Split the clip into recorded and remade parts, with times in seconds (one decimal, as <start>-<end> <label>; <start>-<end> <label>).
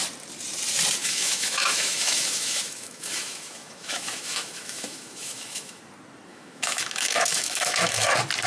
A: 0.0-1.0 recorded; 1.0-5.8 remade; 5.8-6.3 recorded; 6.3-8.1 remade; 8.1-8.5 recorded